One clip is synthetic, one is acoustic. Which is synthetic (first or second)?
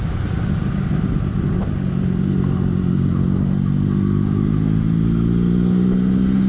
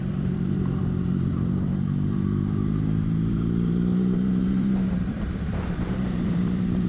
second